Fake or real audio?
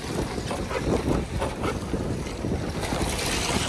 real